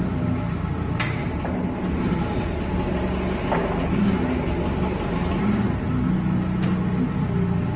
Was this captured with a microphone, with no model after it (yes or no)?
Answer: yes